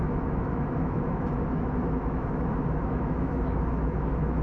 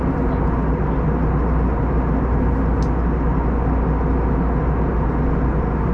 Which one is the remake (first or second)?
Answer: first